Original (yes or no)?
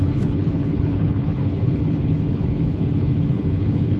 no